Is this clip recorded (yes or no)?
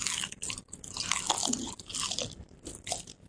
yes